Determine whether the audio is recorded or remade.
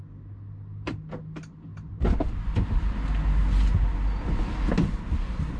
recorded